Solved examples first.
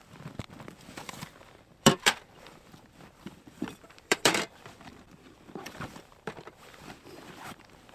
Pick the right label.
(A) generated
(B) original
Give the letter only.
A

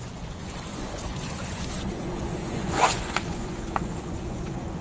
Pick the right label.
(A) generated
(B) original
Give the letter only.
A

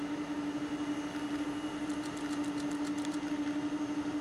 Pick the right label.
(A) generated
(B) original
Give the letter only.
B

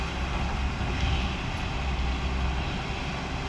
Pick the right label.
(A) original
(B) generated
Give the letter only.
A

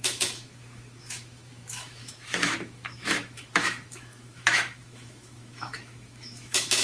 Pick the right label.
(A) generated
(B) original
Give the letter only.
A